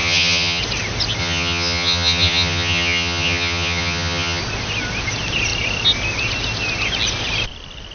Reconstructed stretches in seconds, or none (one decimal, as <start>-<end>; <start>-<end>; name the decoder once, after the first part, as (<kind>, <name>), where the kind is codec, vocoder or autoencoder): 0.0-0.6 (vocoder, HiFi-GAN); 1.2-4.4